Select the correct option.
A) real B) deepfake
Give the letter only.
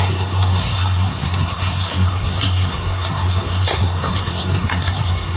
B